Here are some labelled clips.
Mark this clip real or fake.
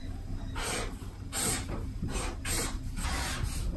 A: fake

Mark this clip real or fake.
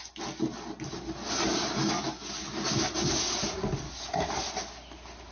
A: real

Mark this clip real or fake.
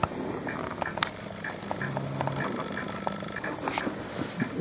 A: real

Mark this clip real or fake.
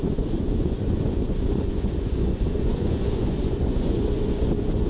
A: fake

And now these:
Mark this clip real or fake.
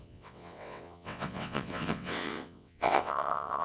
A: fake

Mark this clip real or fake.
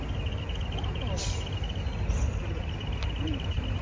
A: real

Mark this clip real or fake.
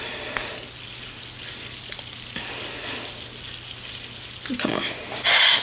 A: real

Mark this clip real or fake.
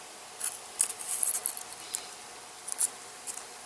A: real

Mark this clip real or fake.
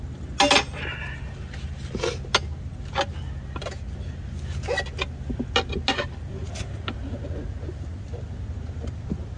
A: real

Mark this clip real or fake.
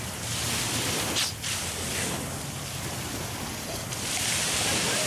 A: real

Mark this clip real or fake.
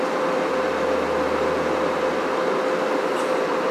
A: real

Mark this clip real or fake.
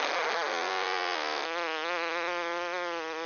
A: real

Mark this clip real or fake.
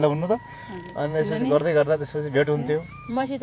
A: fake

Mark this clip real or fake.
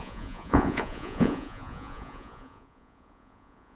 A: fake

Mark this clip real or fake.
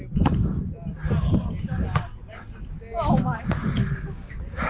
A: real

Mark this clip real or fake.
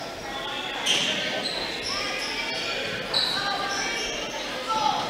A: real